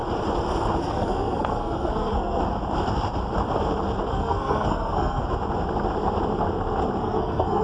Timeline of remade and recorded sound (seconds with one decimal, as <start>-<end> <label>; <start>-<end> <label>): 0.0-0.8 recorded; 0.8-2.4 remade; 2.4-4.1 recorded; 4.1-5.2 remade; 5.2-7.0 recorded; 7.0-7.6 remade